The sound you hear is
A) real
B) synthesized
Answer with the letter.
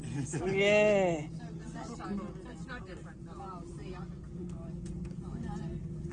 A